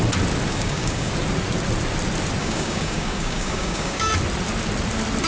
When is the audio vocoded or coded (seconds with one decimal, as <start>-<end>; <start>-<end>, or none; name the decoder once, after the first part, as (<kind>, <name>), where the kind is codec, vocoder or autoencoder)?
0.5-1.1 (codec, DAC); 2.4-4.1